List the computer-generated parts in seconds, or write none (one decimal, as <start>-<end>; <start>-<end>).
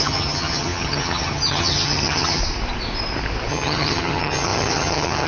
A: 0.0-2.4; 3.5-5.3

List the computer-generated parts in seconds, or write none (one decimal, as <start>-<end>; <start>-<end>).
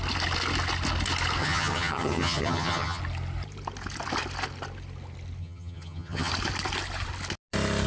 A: 1.4-3.0; 5.4-6.3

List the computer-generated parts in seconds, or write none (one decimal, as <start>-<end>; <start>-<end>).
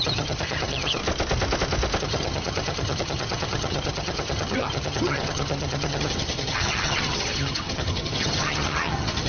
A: 0.0-1.0; 2.0-9.3